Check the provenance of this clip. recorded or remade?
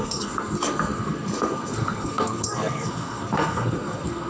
remade